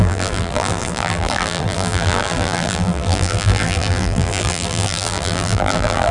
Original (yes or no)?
no